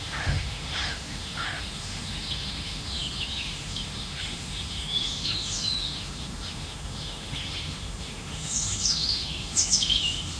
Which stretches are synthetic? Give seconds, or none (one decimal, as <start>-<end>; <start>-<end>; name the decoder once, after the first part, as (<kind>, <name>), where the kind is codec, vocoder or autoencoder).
0.0-10.4 (autoencoder, DAC-VAE)